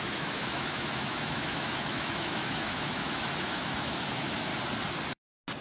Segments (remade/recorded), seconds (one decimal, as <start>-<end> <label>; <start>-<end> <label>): 0.0-4.5 remade; 4.5-5.6 recorded